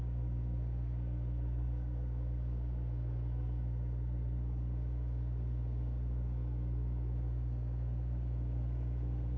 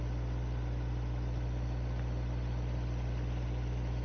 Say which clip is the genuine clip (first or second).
second